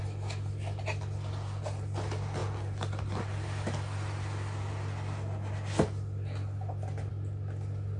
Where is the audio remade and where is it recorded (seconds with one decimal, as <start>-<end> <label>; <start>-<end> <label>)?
0.0-8.0 recorded

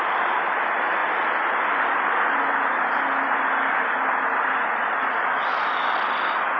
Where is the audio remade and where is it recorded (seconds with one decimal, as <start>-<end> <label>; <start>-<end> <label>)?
0.0-6.6 recorded

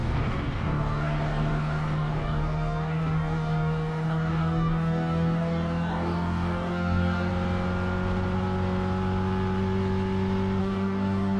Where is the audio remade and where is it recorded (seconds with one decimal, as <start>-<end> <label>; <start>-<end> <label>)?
0.0-7.3 remade; 7.3-10.6 recorded; 10.6-11.4 remade

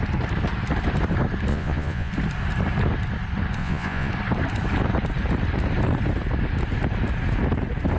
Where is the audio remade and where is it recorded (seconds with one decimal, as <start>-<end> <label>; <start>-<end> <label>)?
0.0-1.5 recorded; 1.5-2.1 remade; 2.1-3.6 recorded; 3.6-4.1 remade; 4.1-8.0 recorded

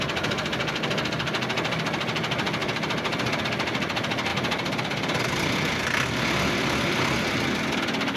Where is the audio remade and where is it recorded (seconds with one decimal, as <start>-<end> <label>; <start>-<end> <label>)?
0.0-2.6 recorded; 2.6-3.4 remade; 3.4-8.2 recorded

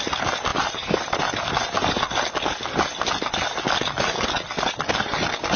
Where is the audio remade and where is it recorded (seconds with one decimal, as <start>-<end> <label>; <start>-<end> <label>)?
0.0-0.5 recorded; 0.5-1.2 remade; 1.2-5.6 recorded

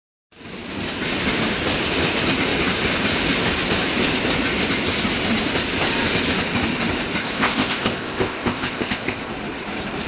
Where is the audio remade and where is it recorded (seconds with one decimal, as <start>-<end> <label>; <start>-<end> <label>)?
0.0-7.2 recorded; 7.2-9.3 remade; 9.3-10.1 recorded

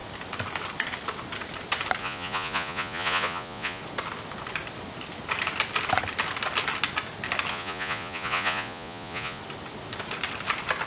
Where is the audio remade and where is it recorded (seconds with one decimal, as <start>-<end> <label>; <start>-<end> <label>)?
0.0-2.0 recorded; 2.0-3.8 remade; 3.8-7.5 recorded; 7.5-9.4 remade; 9.4-10.9 recorded